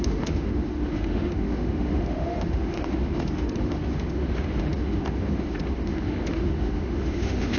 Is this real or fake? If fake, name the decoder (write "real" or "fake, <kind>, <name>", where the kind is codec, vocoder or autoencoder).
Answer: fake, autoencoder, DAC-VAE